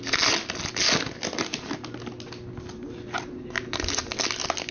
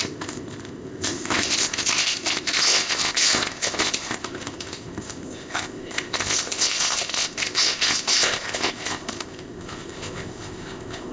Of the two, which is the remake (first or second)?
second